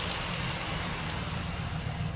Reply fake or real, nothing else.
real